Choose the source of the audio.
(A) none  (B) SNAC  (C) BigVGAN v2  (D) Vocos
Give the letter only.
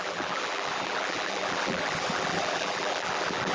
C